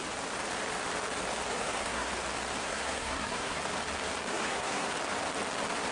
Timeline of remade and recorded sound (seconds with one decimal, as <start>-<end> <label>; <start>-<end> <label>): 0.0-1.5 recorded; 1.5-2.1 remade; 2.1-2.6 recorded; 2.6-3.6 remade; 3.6-4.3 recorded; 4.3-4.9 remade; 4.9-5.9 recorded